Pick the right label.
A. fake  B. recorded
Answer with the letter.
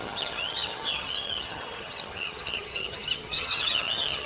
A